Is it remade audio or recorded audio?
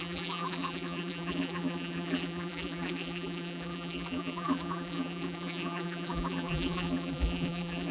remade